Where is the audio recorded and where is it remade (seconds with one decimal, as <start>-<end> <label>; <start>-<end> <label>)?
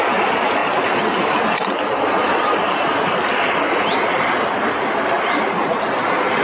0.0-6.4 recorded